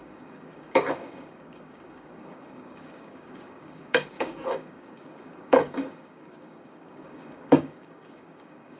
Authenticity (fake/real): fake